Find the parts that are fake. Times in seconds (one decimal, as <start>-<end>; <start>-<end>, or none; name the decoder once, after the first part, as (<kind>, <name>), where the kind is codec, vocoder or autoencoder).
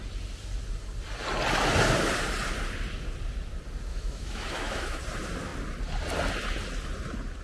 3.9-5.0 (autoencoder, DAC-VAE)